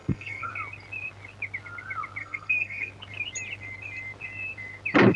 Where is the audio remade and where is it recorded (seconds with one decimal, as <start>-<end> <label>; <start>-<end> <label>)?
0.0-0.5 remade; 0.5-2.2 recorded; 2.2-2.9 remade; 2.9-5.2 recorded